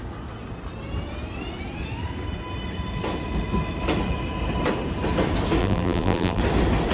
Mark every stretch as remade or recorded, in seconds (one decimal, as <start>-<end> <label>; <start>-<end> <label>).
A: 0.0-5.6 recorded; 5.6-6.4 remade; 6.4-6.9 recorded